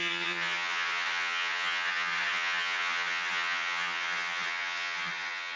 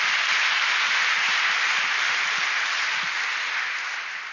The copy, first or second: first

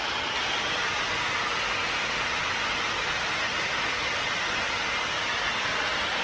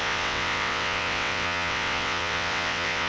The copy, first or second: second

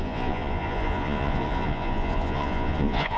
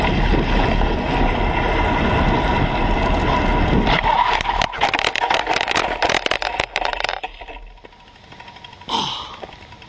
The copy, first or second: first